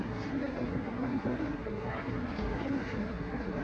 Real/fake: fake